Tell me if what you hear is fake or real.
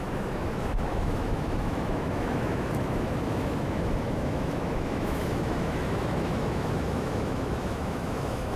fake